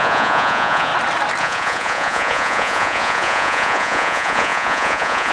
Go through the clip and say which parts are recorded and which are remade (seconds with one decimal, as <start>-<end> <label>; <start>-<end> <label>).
0.0-0.9 remade; 0.9-1.4 recorded; 1.4-5.3 remade